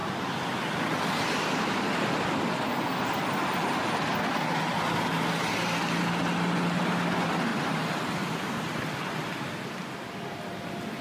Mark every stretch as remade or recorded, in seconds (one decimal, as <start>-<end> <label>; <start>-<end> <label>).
0.0-7.5 recorded; 7.5-8.6 remade; 8.6-11.0 recorded